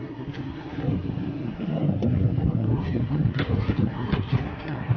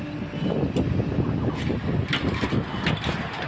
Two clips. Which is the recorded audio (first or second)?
second